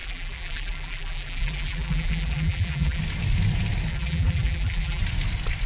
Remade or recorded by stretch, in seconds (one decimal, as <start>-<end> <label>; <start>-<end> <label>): 0.0-3.0 remade; 3.0-3.9 recorded; 3.9-5.0 remade; 5.0-5.7 recorded